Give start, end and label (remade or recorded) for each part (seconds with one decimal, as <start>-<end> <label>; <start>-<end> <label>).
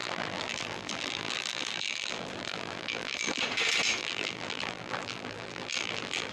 0.0-3.4 remade; 3.4-4.0 recorded; 4.0-6.3 remade